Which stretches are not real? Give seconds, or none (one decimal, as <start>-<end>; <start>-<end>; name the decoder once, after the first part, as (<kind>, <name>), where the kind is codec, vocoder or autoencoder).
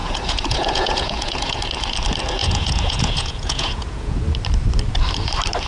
0.0-1.6 (vocoder, Vocos); 2.4-4.2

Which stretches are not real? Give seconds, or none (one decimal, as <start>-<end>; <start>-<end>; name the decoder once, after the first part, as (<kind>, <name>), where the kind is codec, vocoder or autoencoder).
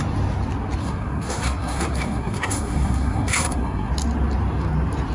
0.8-3.9 (codec, SNAC)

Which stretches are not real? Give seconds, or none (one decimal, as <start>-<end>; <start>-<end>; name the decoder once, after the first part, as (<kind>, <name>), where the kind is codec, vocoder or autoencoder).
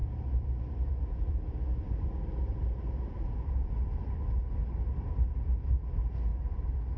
0.0-4.2 (vocoder, BigVGAN v2); 6.3-7.0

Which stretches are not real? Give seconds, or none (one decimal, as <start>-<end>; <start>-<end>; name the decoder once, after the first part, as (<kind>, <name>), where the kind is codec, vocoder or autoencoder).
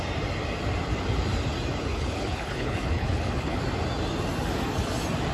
1.9-3.6 (codec, HILCodec)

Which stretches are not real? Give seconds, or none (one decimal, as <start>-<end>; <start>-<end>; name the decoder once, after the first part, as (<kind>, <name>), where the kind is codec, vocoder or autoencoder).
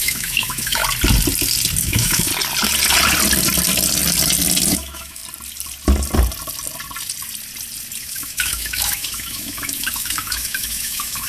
0.0-0.8 (autoencoder, DAC-VAE); 1.8-2.3; 4.7-5.2; 8.0-11.3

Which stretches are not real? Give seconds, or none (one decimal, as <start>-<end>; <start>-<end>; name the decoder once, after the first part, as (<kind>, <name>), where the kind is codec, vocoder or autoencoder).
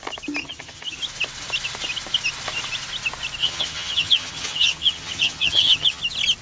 0.4-1.0 (vocoder, HiFi-GAN); 3.4-6.0